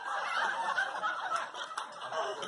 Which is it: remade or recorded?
recorded